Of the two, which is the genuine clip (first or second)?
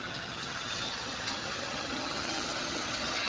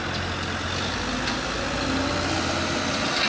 second